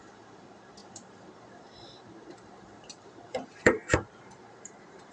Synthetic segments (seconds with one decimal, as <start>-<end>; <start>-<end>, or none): 0.0-5.1